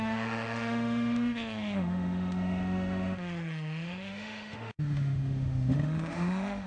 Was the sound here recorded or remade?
remade